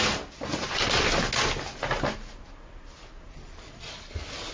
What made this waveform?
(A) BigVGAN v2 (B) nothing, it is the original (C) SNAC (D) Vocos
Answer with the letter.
B